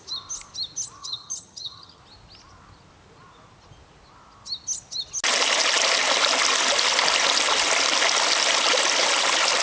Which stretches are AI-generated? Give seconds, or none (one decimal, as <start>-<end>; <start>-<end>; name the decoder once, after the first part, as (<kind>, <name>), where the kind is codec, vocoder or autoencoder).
1.0-2.0 (vocoder, HiFi-GAN)